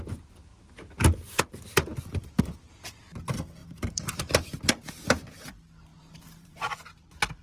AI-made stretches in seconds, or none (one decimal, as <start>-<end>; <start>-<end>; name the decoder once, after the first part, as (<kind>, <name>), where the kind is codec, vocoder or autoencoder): 3.6-4.5 (vocoder, BigVGAN v2); 5.9-6.7